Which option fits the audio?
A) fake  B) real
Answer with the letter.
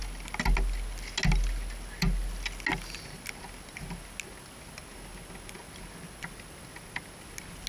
B